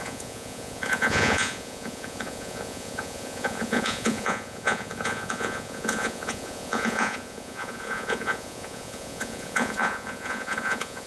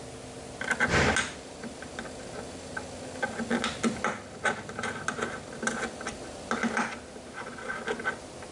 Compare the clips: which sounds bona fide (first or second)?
second